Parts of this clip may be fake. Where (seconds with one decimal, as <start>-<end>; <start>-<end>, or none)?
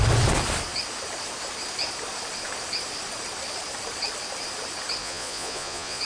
5.0-6.0